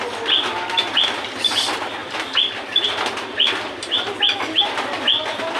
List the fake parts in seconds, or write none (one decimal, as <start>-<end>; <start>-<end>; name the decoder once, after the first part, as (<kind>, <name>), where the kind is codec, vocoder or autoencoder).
none